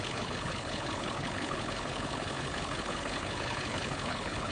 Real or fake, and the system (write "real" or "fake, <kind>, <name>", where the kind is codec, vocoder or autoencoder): fake, codec, HILCodec